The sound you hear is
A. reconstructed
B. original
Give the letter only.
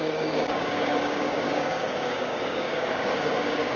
A